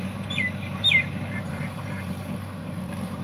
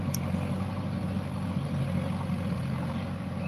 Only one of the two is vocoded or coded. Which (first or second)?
first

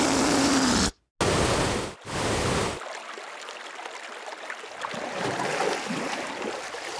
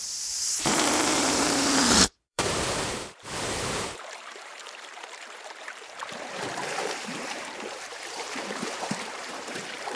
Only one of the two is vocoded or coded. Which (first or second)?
second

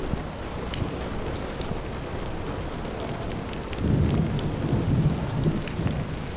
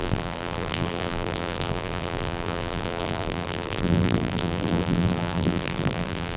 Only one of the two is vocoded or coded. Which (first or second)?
second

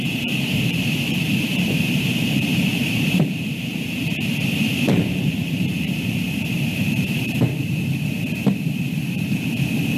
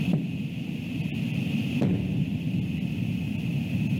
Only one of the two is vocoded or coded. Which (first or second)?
first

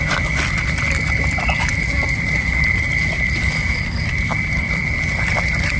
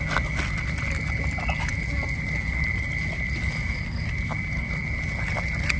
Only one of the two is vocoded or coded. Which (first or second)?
first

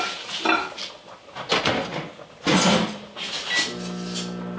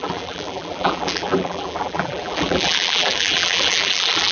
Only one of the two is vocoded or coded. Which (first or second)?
second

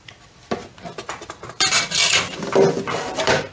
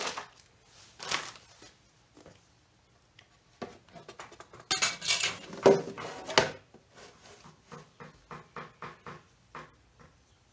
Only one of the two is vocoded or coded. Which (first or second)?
first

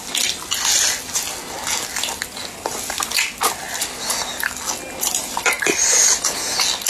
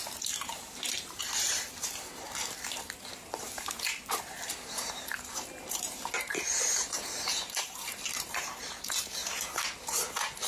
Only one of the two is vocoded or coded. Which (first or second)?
second